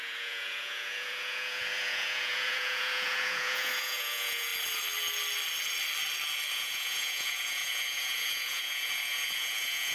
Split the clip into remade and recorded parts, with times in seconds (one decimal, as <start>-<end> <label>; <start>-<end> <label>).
0.0-4.5 remade; 4.5-6.5 recorded; 6.5-9.9 remade